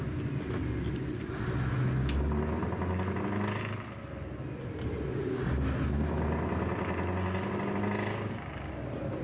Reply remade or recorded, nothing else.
recorded